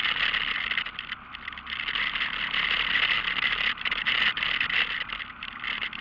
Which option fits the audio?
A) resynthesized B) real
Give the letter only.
B